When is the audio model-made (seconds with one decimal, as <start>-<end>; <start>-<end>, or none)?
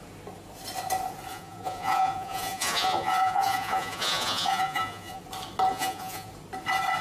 1.3-5.2; 5.7-6.3